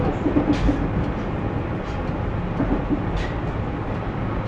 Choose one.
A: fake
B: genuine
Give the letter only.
B